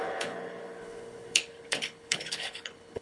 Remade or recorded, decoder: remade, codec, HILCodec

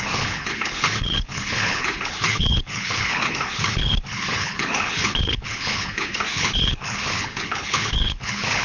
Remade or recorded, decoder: remade, codec, HILCodec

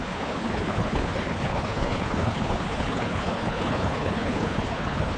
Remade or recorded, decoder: remade, codec, HILCodec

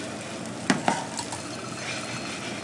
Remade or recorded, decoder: recorded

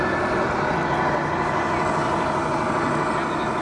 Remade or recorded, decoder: recorded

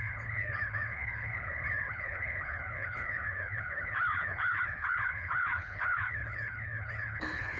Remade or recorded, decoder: remade, codec, HILCodec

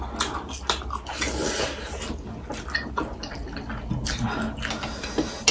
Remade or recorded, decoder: recorded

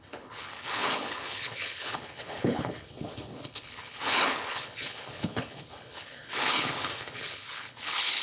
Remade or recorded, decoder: remade, codec, HILCodec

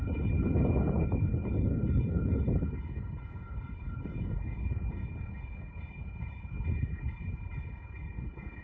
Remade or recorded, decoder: remade, codec, HILCodec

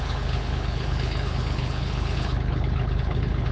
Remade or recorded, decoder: remade, codec, HILCodec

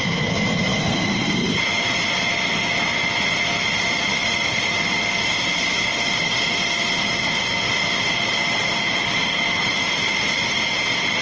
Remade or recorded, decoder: recorded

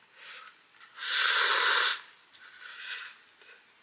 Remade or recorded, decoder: recorded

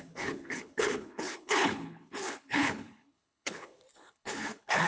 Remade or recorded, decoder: remade, codec, HILCodec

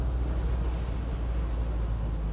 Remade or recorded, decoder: recorded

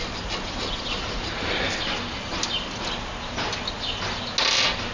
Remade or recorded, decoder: recorded